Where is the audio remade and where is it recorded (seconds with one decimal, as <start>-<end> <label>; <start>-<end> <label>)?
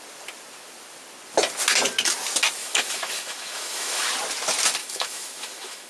0.0-2.6 recorded; 2.6-4.0 remade; 4.0-4.8 recorded; 4.8-5.9 remade